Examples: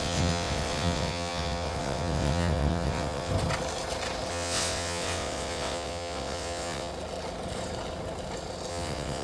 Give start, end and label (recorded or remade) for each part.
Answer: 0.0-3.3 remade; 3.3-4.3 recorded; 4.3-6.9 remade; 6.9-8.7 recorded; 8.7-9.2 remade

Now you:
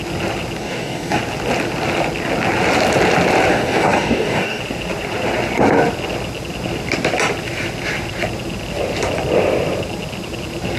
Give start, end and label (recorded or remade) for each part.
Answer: 0.0-0.6 recorded; 0.6-1.2 remade; 1.2-3.5 recorded; 3.5-4.6 remade; 4.6-10.8 recorded